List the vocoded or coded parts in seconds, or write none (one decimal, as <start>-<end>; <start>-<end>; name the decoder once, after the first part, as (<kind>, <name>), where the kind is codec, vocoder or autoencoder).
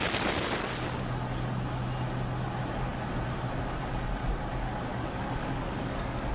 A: 4.9-6.3 (codec, DAC)